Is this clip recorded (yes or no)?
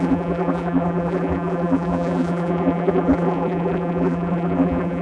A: no